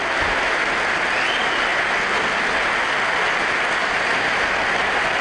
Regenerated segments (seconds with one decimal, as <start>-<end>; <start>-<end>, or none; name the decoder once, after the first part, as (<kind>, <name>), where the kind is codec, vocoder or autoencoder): none